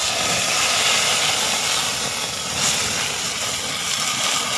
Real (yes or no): yes